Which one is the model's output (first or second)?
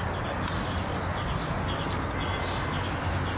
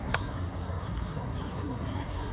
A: second